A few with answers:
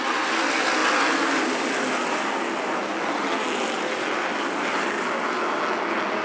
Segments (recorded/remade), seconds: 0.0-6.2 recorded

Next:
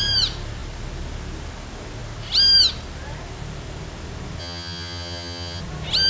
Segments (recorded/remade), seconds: 0.0-4.4 recorded; 4.4-5.6 remade; 5.6-6.1 recorded

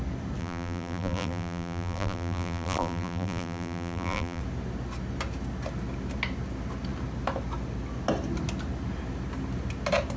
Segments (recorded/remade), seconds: 0.0-0.4 recorded; 0.4-4.4 remade; 4.4-10.2 recorded

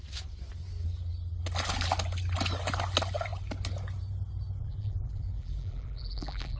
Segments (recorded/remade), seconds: 0.0-4.6 recorded; 4.6-6.6 remade